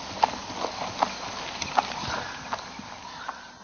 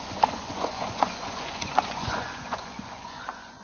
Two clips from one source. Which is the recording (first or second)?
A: first